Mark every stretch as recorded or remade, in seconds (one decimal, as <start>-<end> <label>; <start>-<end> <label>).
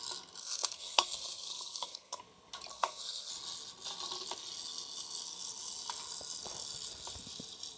0.0-0.4 recorded; 0.4-2.2 remade; 2.2-2.7 recorded; 2.7-3.3 remade; 3.3-7.8 recorded